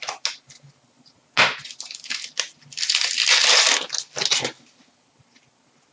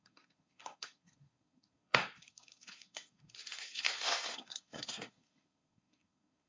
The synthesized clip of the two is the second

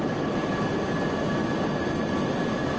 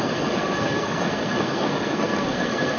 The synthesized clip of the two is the second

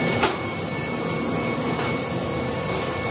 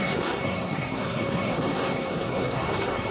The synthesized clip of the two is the second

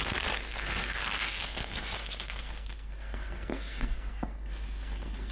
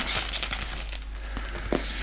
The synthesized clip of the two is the first